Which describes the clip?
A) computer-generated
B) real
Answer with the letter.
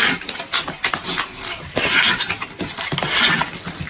B